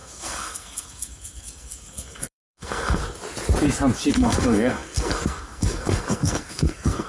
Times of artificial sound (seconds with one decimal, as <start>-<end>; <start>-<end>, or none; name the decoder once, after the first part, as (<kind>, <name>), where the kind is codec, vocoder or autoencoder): 0.0-3.0 (codec, SNAC); 4.1-7.1